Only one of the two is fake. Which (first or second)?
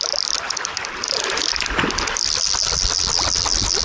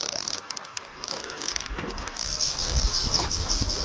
second